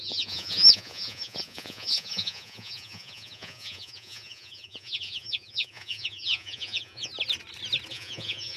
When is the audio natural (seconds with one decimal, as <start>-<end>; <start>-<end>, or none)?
7.1-7.9